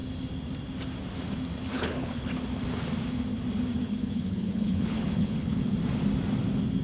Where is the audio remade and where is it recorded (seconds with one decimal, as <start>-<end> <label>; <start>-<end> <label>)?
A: 0.0-1.7 recorded; 1.7-2.3 remade; 2.3-3.8 recorded; 3.8-5.6 remade; 5.6-6.8 recorded